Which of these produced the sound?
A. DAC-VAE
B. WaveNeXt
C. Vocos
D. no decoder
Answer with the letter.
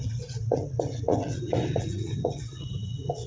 B